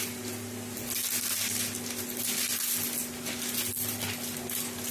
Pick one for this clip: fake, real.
real